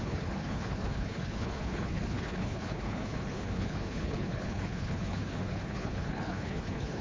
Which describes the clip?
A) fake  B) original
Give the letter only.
A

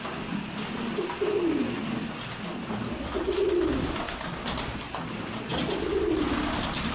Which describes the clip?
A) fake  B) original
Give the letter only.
B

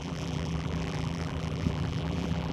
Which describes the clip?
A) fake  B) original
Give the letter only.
A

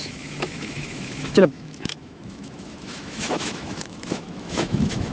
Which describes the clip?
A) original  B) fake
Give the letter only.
B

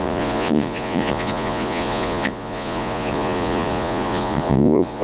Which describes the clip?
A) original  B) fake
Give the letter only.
B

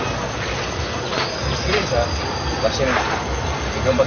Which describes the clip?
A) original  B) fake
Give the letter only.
A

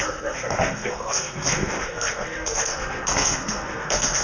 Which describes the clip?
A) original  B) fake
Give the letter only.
B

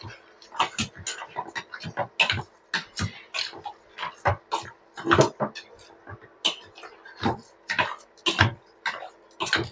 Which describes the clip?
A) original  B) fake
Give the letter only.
A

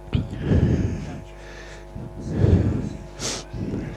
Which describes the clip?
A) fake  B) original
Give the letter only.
B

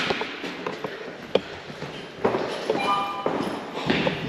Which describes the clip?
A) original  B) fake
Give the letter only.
A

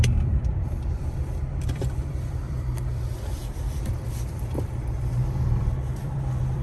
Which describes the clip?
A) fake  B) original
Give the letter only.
A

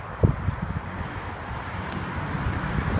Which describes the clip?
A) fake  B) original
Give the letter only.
B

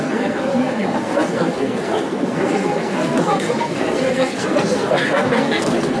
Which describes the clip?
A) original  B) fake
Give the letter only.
B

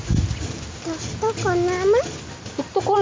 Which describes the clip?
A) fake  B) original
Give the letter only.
B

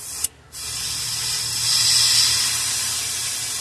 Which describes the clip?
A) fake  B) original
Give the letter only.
B